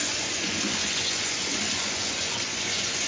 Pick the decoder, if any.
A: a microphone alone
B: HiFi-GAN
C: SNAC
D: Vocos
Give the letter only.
D